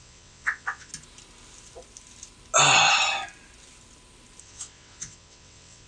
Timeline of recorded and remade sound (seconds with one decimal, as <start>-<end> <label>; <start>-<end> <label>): 0.0-0.9 remade; 0.9-4.4 recorded; 4.4-5.9 remade